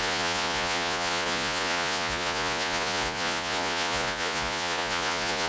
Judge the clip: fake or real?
fake